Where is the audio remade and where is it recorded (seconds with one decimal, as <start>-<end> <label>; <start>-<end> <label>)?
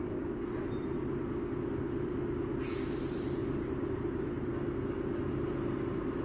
0.0-3.4 recorded; 3.4-4.5 remade; 4.5-6.2 recorded